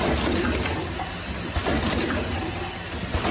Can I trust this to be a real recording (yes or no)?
yes